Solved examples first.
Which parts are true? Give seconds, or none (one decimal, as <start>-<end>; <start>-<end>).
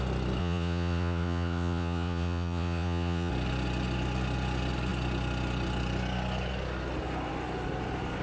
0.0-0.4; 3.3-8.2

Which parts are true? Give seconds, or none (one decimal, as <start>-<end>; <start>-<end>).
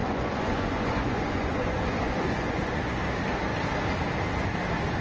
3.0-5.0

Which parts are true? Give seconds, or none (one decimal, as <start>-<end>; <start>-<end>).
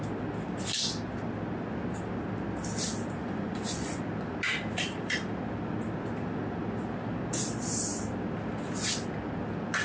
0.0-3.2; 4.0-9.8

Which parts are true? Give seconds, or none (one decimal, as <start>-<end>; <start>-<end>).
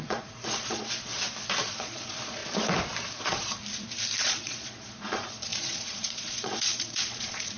1.1-1.6; 2.4-3.2; 3.6-4.2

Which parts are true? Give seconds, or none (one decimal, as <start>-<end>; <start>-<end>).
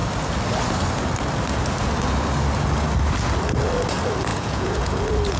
0.0-4.3; 4.9-5.4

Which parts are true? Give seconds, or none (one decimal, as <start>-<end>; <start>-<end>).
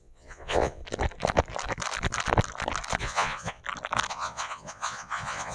0.8-3.0; 3.6-4.1